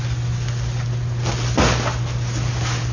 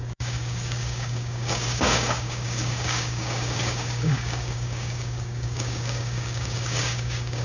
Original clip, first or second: first